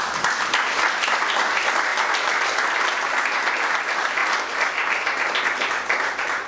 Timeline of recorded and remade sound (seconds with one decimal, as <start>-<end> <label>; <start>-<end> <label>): 0.0-1.9 remade; 1.9-3.6 recorded; 3.6-4.2 remade; 4.2-5.4 recorded; 5.4-6.5 remade